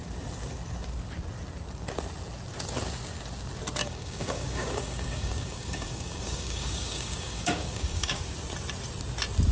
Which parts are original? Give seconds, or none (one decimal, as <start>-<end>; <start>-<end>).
0.0-3.8; 8.2-9.5